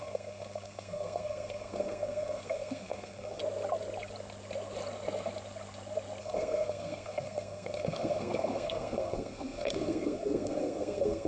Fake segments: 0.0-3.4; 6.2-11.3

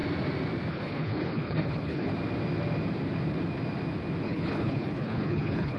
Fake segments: 0.7-2.1; 4.2-5.8

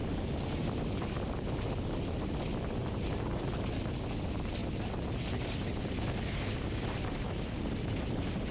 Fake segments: none

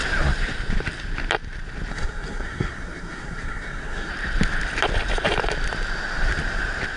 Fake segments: 1.9-4.1

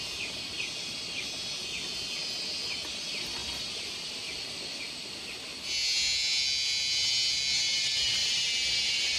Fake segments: none

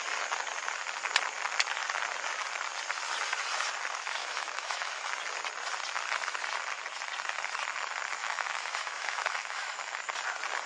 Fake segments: 4.2-5.1; 8.2-10.0